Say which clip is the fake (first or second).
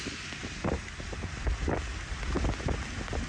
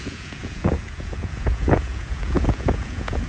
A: second